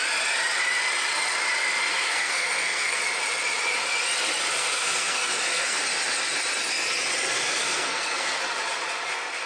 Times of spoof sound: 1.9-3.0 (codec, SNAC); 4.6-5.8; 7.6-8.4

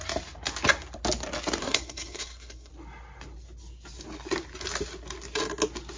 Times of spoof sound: 1.6-2.7 (codec, SNAC)

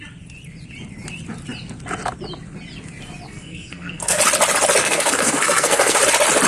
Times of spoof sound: 3.3-4.2 (codec, SNAC); 4.8-6.0

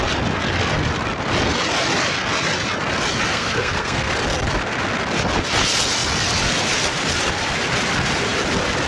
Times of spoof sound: 3.3-4.1 (codec, SNAC)

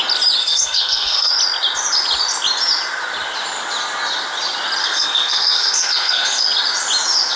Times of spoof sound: 0.4-1.3 (codec, SNAC); 4.8-6.4

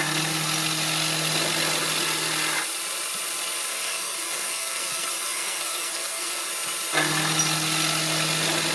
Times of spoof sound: 3.7-6.5 (codec, SNAC)

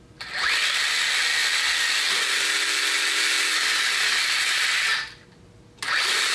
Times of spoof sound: none